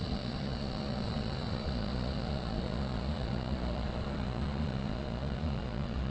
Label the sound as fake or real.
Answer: fake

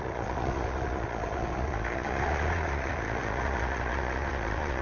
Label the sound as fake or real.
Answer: fake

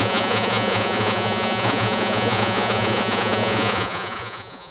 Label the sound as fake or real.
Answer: fake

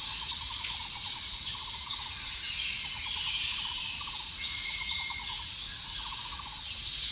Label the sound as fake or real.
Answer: fake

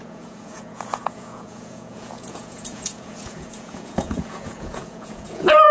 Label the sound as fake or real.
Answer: fake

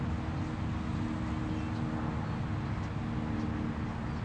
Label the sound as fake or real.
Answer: real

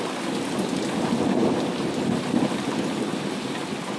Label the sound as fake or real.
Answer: real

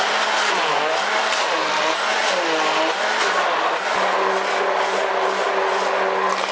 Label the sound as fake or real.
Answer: real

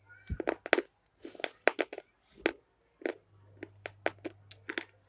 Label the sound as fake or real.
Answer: real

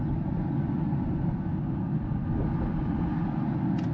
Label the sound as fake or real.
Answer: real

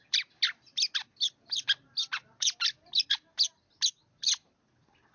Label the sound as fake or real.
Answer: real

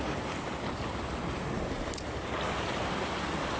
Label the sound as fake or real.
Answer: real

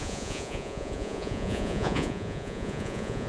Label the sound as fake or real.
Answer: fake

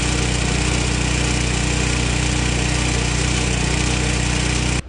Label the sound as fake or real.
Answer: real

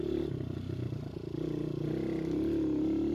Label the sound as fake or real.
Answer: real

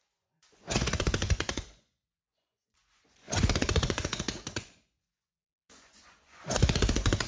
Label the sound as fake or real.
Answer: fake